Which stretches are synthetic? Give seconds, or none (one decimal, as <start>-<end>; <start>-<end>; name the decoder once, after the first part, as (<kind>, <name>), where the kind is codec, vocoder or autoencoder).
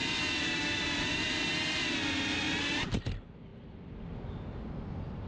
none